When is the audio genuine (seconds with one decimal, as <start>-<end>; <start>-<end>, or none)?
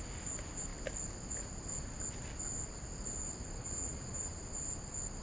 0.0-3.6; 4.3-5.2